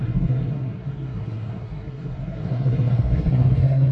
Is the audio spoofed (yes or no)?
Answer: yes